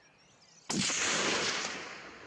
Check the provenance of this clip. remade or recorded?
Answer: recorded